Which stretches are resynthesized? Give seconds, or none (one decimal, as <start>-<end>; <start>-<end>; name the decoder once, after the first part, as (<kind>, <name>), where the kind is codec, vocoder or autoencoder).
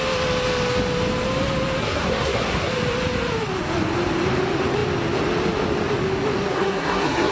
1.8-2.7 (codec, SNAC); 6.5-7.3